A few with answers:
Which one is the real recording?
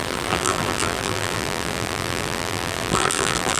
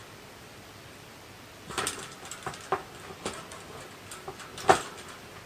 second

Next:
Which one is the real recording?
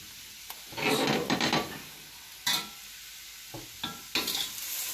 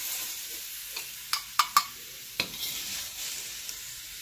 first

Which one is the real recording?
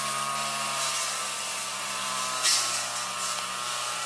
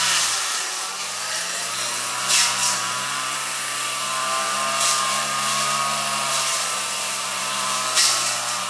first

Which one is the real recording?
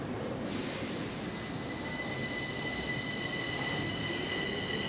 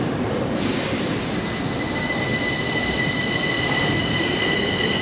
first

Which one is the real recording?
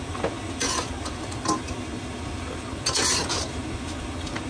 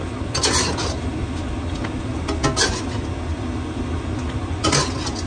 second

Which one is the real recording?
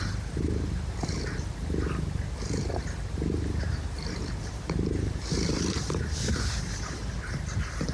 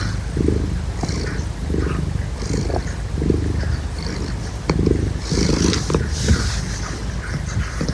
second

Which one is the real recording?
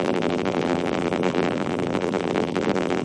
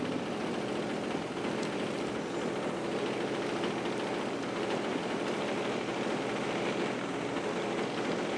second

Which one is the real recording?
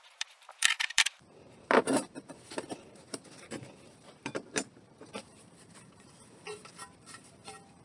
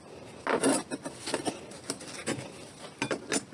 second